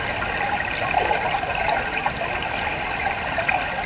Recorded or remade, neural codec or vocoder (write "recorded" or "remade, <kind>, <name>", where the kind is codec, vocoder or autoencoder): recorded